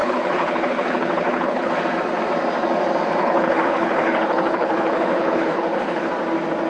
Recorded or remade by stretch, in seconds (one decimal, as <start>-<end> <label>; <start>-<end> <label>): 0.0-1.7 remade; 1.7-3.2 recorded; 3.2-6.1 remade; 6.1-6.7 recorded

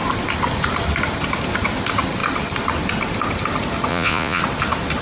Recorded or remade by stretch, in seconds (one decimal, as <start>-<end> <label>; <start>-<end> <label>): 0.0-3.9 recorded; 3.9-4.4 remade; 4.4-5.0 recorded

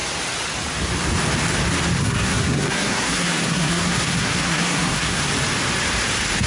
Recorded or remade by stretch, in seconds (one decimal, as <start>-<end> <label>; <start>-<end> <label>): 0.0-2.0 recorded; 2.0-5.3 remade; 5.3-6.5 recorded

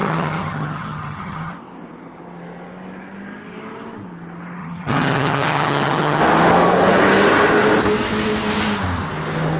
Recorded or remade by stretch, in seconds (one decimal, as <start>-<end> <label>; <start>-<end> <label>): 0.0-1.5 remade; 1.5-4.6 recorded; 4.6-6.2 remade; 6.2-9.6 recorded